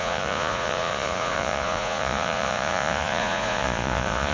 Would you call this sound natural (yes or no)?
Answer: no